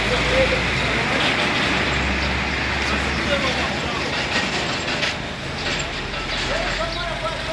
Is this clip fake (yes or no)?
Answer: no